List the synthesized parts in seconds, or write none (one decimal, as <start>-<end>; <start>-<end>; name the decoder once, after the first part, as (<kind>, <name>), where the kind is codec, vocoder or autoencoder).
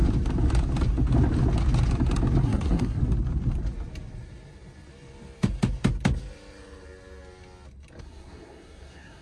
2.4-3.0 (codec, SNAC); 8.0-9.2